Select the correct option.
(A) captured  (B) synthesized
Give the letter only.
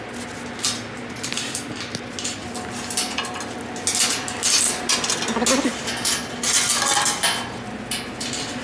A